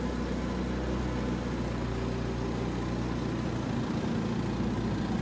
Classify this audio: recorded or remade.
recorded